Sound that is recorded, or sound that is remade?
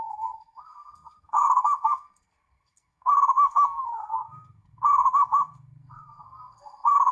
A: remade